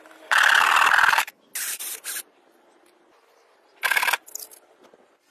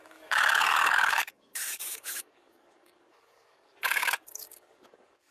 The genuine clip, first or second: first